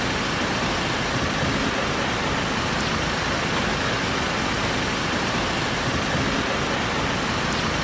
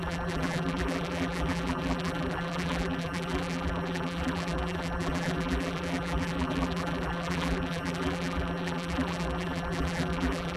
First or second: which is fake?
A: second